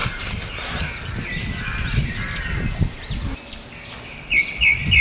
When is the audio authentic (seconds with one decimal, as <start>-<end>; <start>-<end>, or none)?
0.0-5.0